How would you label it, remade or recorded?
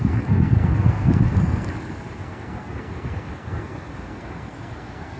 remade